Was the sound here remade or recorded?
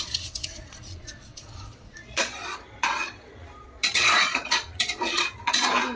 remade